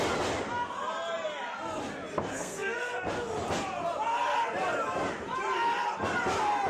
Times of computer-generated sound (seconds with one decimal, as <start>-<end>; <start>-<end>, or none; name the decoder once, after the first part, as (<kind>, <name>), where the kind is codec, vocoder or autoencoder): 2.3-2.9 (codec, SNAC)

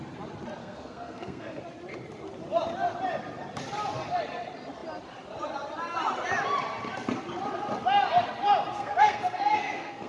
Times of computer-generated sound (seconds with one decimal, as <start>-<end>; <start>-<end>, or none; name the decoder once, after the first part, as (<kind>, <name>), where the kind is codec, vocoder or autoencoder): 0.6-1.6 (codec, SNAC); 8.7-10.1

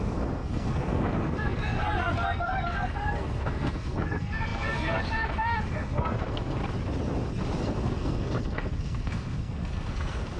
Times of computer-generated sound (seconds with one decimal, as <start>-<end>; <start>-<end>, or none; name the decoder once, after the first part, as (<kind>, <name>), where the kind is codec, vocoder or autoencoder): 0.0-6.6 (codec, SNAC); 7.6-10.4

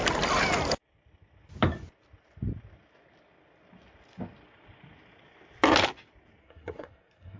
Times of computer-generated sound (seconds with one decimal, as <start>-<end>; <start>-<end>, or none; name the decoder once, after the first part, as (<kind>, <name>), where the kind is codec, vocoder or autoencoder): 6.4-7.4 (codec, SNAC)

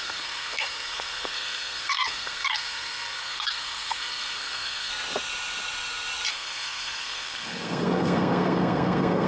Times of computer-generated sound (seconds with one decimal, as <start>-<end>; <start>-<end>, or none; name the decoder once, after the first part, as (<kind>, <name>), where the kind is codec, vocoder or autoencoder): 0.0-4.9 (codec, SNAC); 6.3-9.3

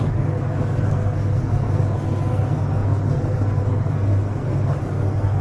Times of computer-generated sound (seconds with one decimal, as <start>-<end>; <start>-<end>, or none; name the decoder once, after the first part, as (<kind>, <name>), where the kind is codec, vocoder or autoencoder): 0.0-5.4 (codec, SNAC)

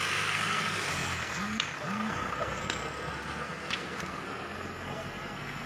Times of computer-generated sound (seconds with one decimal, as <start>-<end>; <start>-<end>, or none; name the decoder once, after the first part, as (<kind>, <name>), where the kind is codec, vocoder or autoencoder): 0.0-5.7 (codec, SNAC)